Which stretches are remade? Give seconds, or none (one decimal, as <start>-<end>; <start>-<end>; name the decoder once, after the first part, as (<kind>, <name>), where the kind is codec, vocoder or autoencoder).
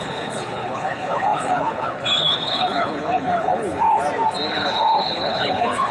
0.0-4.0 (codec, HILCodec); 4.5-5.9